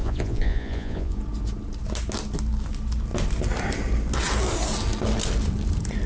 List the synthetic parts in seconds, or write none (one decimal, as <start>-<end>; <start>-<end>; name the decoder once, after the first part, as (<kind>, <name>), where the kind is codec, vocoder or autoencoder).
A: 0.0-1.2 (vocoder, Vocos)